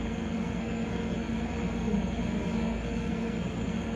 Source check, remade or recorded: remade